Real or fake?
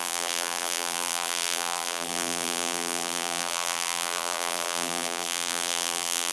fake